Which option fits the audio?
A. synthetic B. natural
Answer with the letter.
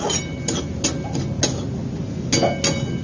B